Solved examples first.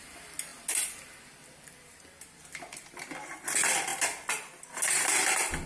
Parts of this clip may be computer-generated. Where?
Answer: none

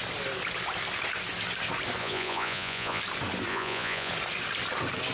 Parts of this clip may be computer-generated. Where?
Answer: 2.0-3.0 (vocoder, Vocos); 3.5-4.1

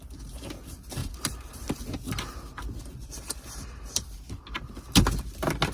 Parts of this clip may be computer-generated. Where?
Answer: 1.0-4.1 (vocoder, BigVGAN v2)

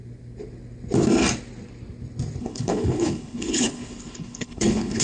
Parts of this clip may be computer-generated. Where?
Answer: 2.4-5.0 (codec, HILCodec)

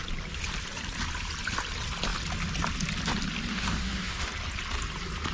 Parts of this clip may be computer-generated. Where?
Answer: 3.5-4.3 (autoencoder, DAC-VAE)

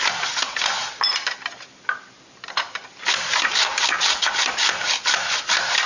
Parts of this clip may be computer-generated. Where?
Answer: 0.8-4.3 (vocoder, BigVGAN v2)